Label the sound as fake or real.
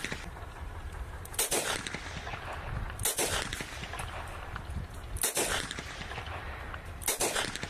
real